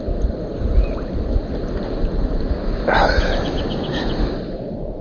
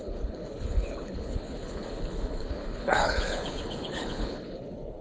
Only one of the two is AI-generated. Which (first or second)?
second